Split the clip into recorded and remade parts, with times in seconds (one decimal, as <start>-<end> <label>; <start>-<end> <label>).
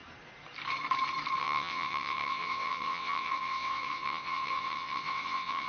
0.0-1.4 recorded; 1.4-5.7 remade